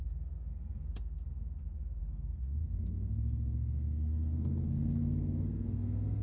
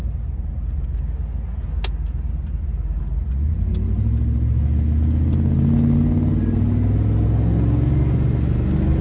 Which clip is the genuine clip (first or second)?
second